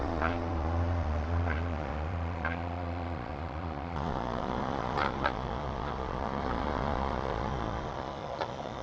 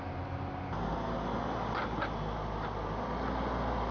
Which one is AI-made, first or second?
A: first